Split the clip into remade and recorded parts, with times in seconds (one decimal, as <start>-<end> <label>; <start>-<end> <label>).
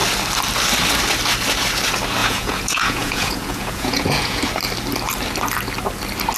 0.0-2.2 recorded; 2.2-4.4 remade; 4.4-6.4 recorded